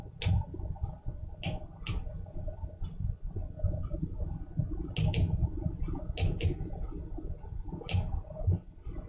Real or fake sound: real